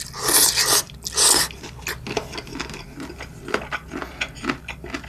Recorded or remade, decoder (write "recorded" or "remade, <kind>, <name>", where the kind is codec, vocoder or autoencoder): recorded